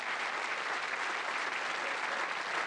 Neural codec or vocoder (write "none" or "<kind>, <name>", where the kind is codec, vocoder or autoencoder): none